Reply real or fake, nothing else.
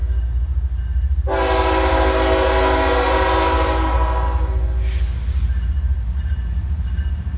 real